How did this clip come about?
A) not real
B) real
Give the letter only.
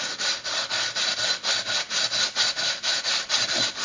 B